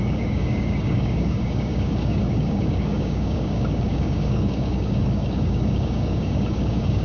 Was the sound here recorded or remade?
remade